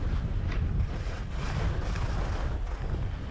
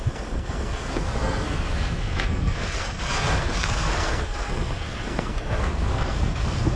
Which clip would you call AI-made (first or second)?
second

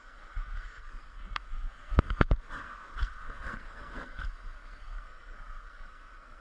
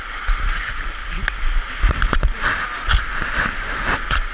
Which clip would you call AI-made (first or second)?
first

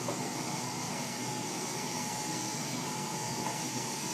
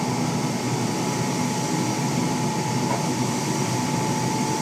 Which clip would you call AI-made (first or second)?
first